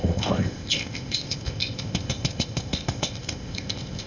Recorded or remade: remade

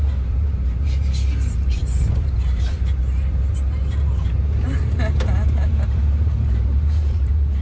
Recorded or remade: remade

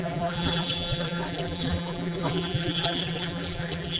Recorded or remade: remade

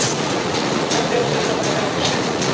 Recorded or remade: remade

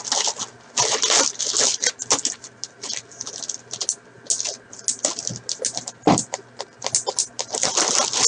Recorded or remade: recorded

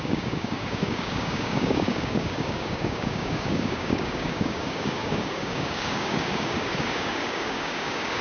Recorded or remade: remade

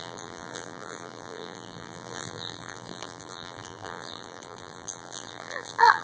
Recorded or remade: remade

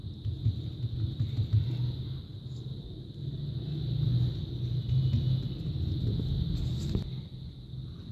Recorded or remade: recorded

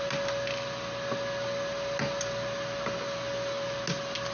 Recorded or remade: recorded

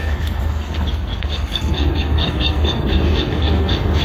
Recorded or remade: remade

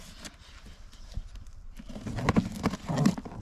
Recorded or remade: recorded